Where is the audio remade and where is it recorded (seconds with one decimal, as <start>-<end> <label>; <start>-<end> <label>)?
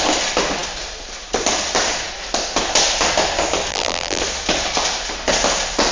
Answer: 0.0-3.7 recorded; 3.7-4.2 remade; 4.2-5.9 recorded